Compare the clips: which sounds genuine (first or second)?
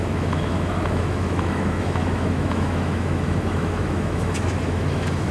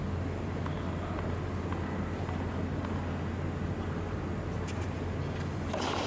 second